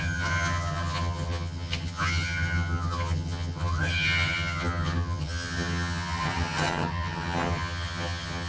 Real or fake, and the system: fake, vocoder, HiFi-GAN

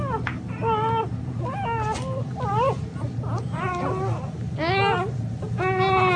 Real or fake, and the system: real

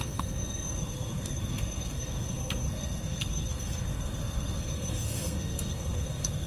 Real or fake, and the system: fake, codec, SNAC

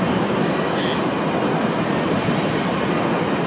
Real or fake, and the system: real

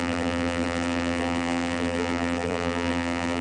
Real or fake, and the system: fake, vocoder, BigVGAN v2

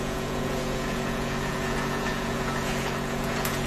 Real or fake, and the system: fake, vocoder, Vocos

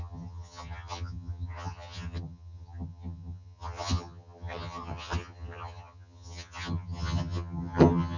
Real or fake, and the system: fake, vocoder, HiFi-GAN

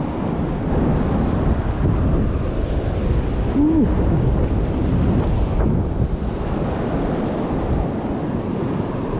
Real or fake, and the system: real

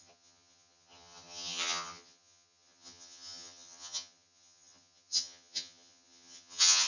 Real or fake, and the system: fake, vocoder, HiFi-GAN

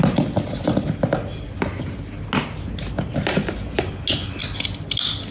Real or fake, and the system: real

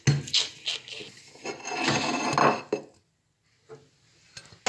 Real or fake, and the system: real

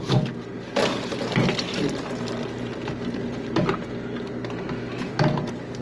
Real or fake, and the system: real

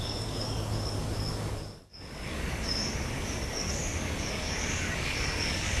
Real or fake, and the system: fake, codec, DAC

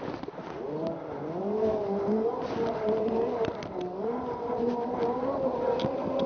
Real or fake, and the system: real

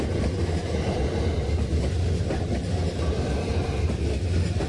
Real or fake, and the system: real